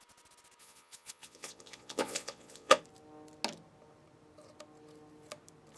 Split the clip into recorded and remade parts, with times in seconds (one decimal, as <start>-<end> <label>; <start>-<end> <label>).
0.0-0.6 recorded; 0.6-2.8 remade; 2.8-5.8 recorded